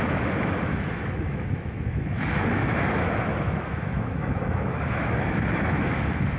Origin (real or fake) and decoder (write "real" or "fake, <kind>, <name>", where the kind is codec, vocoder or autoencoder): fake, autoencoder, DAC-VAE